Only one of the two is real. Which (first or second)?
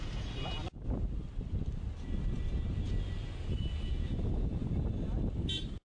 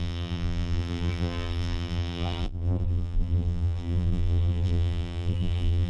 first